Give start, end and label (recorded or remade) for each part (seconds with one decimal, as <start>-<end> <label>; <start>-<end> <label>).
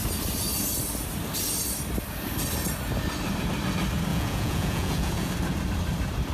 0.0-4.1 recorded; 4.1-5.3 remade; 5.3-6.3 recorded